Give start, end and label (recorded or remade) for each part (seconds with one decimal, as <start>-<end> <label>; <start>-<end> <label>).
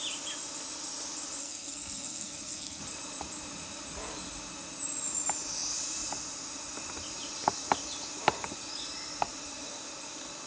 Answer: 0.0-1.4 recorded; 1.4-2.8 remade; 2.8-10.5 recorded